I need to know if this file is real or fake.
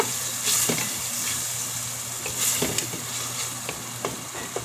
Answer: real